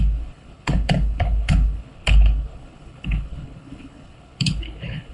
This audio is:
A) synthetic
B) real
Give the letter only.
A